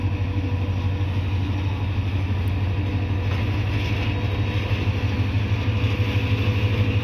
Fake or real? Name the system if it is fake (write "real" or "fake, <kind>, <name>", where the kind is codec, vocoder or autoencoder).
real